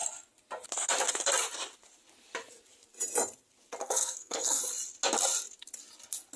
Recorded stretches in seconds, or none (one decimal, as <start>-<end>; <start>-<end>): 0.0-3.8; 4.6-6.4